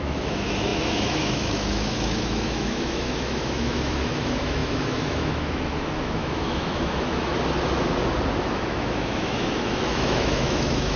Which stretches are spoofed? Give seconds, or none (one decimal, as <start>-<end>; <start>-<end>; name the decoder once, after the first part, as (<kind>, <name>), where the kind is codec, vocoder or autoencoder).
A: 0.0-7.3 (autoencoder, DAC-VAE); 8.4-11.0